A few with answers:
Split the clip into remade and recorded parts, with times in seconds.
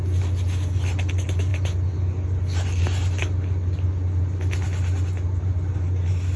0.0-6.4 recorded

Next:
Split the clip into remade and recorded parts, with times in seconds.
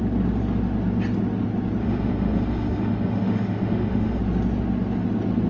0.0-1.8 recorded; 1.8-4.2 remade; 4.2-5.5 recorded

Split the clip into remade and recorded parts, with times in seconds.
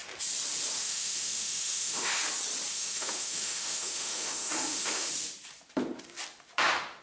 0.0-0.8 recorded; 0.8-2.2 remade; 2.2-2.7 recorded; 2.7-5.1 remade; 5.1-7.0 recorded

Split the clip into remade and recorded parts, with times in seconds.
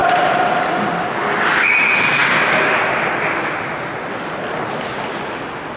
0.0-5.8 recorded